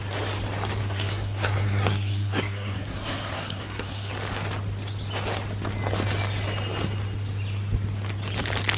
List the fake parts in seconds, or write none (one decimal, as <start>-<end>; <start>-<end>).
0.8-4.1